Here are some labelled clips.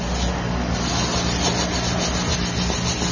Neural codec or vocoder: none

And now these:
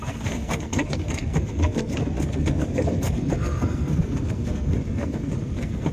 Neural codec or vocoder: codec, SNAC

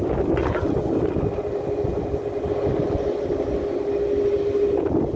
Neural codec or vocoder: none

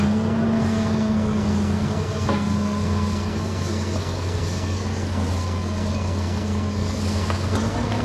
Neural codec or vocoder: codec, SNAC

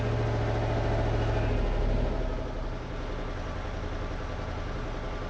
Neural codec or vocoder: none